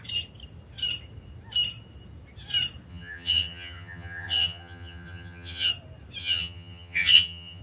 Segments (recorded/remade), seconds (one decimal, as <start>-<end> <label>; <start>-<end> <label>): 0.0-2.9 recorded; 2.9-5.7 remade; 5.7-6.2 recorded; 6.2-7.6 remade